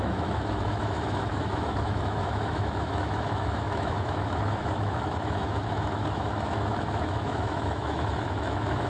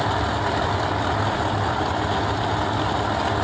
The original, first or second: second